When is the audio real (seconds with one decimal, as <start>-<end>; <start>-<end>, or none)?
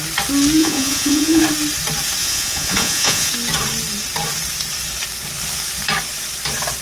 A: 0.0-0.6; 1.4-2.2; 3.3-6.8